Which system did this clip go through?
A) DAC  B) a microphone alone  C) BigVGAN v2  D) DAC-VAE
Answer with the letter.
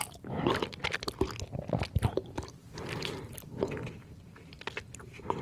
B